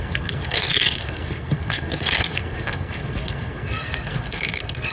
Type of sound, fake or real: fake